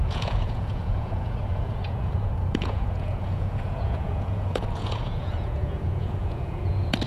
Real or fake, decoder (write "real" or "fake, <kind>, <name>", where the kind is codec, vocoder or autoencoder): fake, vocoder, Vocos